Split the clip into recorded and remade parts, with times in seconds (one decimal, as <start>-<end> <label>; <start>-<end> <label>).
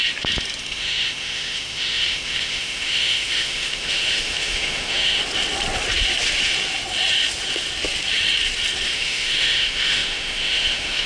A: 0.0-0.6 recorded; 0.6-5.2 remade; 5.2-8.9 recorded; 8.9-11.1 remade